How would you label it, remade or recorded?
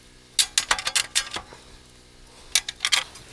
recorded